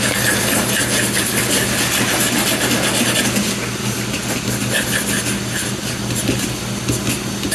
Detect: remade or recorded recorded